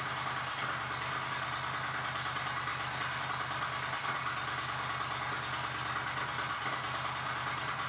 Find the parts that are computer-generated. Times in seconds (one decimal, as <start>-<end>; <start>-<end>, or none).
none